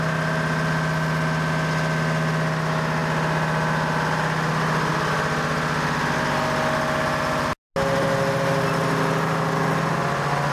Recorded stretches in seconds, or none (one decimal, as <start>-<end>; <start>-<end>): 0.0-10.5